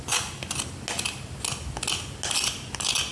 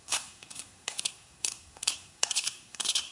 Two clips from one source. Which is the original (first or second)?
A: first